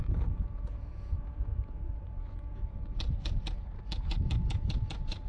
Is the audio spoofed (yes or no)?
yes